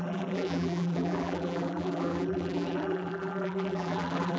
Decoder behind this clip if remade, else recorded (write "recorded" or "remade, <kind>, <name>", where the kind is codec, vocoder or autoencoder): remade, vocoder, BigVGAN v2